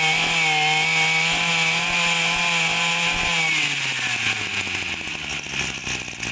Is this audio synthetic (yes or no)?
no